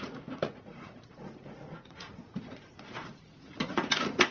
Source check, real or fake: fake